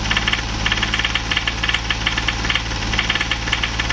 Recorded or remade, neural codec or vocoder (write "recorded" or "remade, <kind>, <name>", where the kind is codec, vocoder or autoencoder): remade, vocoder, BigVGAN v2